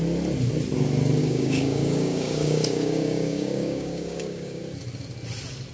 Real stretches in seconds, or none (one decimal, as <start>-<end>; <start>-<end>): 0.0-1.2; 4.6-5.7